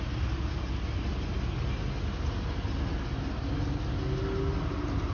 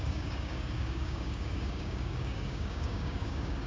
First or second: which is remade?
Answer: second